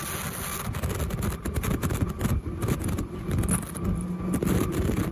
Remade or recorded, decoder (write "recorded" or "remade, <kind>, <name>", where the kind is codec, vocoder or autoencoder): recorded